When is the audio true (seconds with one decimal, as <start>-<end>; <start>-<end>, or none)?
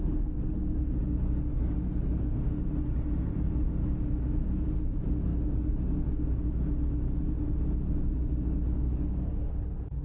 0.0-10.0